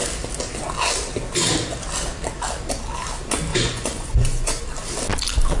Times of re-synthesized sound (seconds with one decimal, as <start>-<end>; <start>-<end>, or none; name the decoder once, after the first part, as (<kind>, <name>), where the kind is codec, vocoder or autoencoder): 3.5-4.6 (vocoder, Vocos)